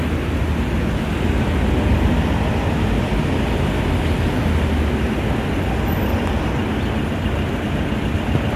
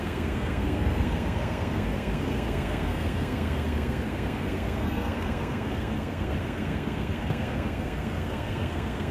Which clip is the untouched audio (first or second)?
first